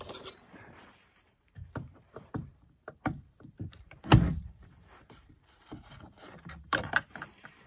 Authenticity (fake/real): fake